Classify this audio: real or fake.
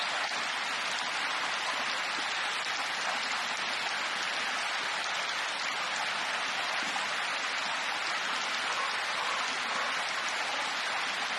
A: real